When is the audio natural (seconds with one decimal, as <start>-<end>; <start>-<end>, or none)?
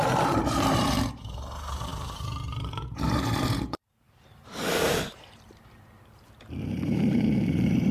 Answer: none